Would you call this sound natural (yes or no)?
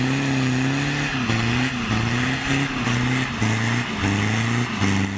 yes